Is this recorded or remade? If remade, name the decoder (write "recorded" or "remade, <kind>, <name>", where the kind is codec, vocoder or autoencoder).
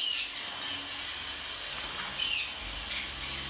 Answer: recorded